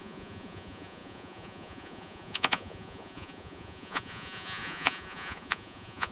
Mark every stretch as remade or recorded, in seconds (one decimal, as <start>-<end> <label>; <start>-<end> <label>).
0.0-6.1 remade